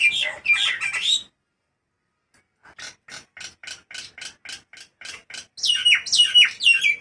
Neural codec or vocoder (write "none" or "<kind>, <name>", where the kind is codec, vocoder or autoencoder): none